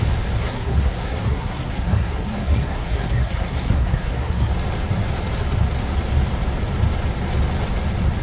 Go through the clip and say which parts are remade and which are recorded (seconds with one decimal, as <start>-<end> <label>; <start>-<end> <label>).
0.0-0.4 recorded; 0.4-4.5 remade; 4.5-8.2 recorded